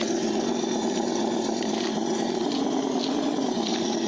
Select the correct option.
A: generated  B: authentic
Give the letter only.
B